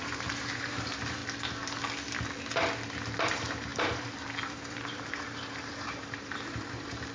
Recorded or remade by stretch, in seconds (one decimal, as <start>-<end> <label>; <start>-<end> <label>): 0.0-1.2 remade; 1.2-3.3 recorded; 3.3-7.1 remade

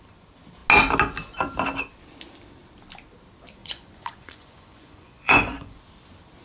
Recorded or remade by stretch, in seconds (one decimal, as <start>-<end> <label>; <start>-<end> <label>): 0.0-3.6 recorded; 3.6-5.8 remade; 5.8-6.4 recorded